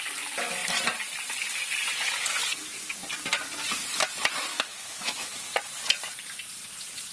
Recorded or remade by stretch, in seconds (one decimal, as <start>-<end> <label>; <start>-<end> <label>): 0.0-4.5 recorded; 4.5-5.4 remade; 5.4-7.1 recorded